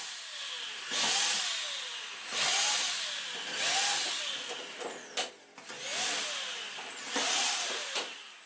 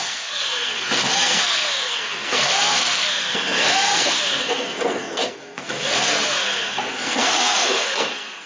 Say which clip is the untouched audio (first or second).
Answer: first